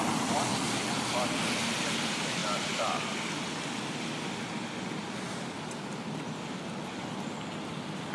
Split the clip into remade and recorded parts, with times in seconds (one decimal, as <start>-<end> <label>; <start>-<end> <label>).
0.0-8.1 recorded

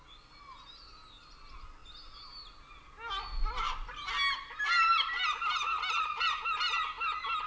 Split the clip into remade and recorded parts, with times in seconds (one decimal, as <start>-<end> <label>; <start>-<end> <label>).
0.0-7.5 recorded

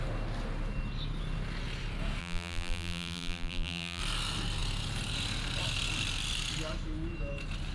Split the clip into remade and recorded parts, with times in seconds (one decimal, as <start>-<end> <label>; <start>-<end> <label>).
0.0-2.2 recorded; 2.2-4.0 remade; 4.0-7.7 recorded

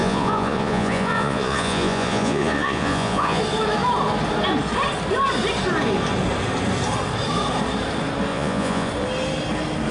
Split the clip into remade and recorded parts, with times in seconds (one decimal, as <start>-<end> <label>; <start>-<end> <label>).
0.0-3.4 remade; 3.4-8.3 recorded; 8.3-8.9 remade; 8.9-9.9 recorded

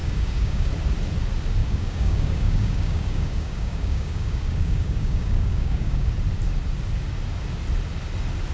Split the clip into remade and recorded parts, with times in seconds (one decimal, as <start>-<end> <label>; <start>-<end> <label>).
0.0-0.7 remade; 0.7-1.6 recorded; 1.6-6.1 remade; 6.1-8.5 recorded